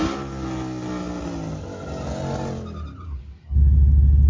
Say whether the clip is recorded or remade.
recorded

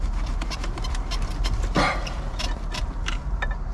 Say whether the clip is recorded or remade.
remade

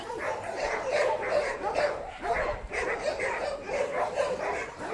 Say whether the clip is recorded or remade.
remade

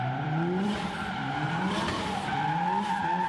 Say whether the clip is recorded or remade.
remade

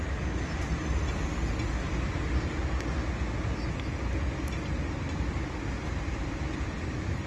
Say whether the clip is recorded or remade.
recorded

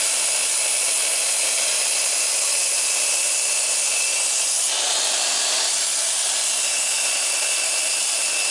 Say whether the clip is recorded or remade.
recorded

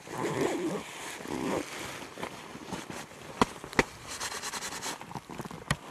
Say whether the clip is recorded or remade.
recorded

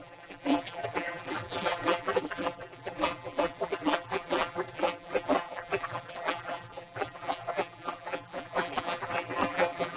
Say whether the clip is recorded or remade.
remade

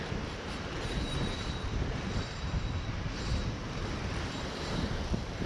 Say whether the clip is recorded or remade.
remade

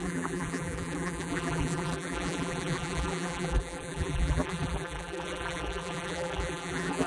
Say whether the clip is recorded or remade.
remade